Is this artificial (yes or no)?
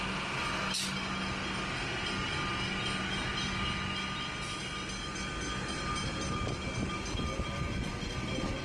no